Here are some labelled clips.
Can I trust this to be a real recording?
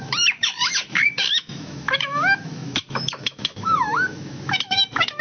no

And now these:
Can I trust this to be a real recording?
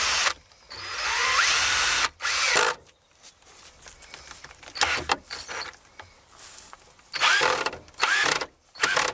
yes